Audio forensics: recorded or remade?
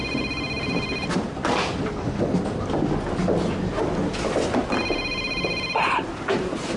recorded